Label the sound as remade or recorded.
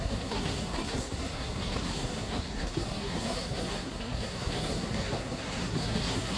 remade